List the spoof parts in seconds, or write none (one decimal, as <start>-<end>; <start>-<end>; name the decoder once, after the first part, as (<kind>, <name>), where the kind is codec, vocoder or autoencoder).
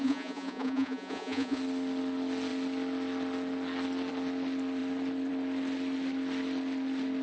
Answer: 0.0-1.6 (vocoder, Vocos)